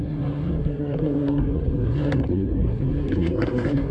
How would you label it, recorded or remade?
remade